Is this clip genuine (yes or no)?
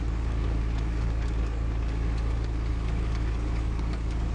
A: no